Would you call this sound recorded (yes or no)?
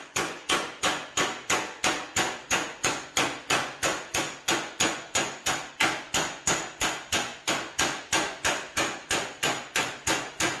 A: no